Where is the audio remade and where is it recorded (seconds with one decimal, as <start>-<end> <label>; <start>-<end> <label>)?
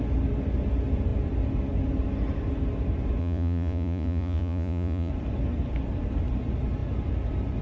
0.0-3.2 recorded; 3.2-5.1 remade; 5.1-7.6 recorded